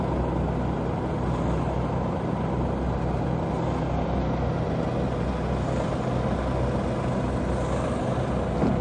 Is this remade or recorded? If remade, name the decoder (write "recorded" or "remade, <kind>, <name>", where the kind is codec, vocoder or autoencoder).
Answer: recorded